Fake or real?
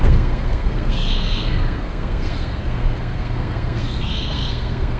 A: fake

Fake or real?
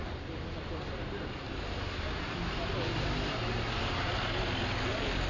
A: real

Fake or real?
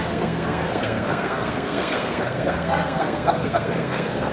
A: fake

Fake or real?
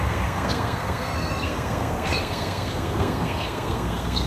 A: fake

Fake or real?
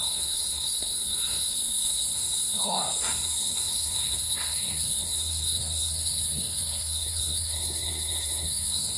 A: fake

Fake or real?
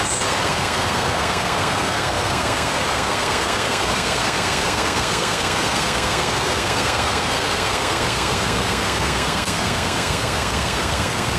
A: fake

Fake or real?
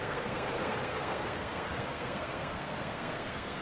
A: fake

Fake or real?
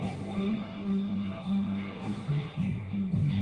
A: fake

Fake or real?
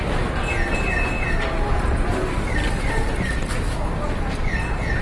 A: real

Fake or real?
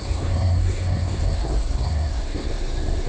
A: fake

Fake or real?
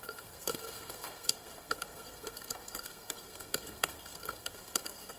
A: fake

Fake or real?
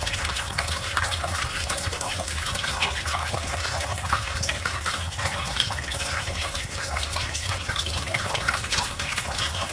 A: fake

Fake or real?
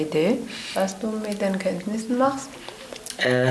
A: real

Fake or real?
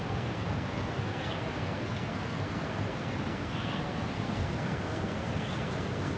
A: fake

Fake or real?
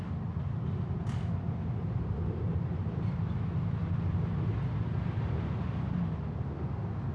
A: real